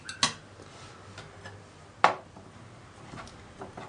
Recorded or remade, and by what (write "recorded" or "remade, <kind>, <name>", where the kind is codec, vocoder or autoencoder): recorded